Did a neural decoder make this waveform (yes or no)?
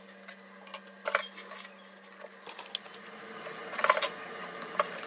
no